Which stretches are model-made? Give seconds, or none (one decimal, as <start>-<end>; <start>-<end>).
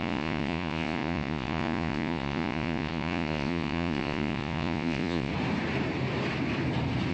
0.0-5.3